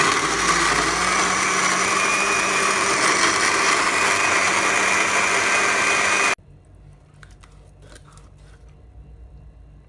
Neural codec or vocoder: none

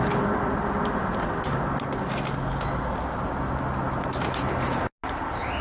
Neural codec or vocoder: none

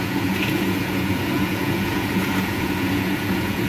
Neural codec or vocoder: vocoder, Vocos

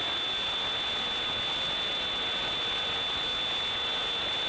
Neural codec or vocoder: none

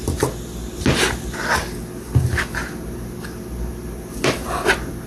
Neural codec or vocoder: none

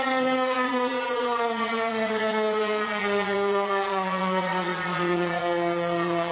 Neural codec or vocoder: vocoder, Vocos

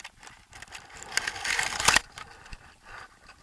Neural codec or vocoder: none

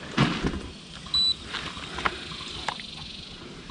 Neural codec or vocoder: none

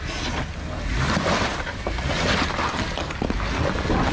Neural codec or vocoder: none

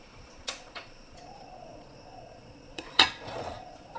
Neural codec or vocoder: vocoder, Vocos